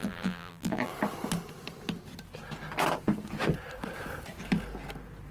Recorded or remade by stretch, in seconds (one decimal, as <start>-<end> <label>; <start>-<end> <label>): 0.0-0.9 remade; 0.9-5.3 recorded